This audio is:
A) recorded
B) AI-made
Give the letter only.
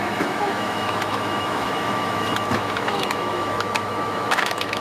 B